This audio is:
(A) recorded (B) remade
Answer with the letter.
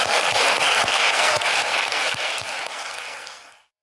B